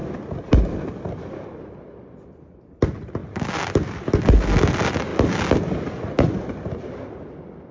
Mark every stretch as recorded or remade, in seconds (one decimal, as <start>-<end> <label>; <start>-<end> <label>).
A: 0.0-7.7 recorded